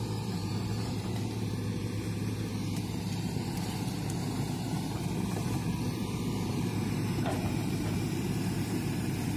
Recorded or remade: remade